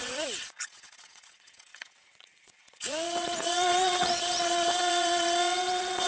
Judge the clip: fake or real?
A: fake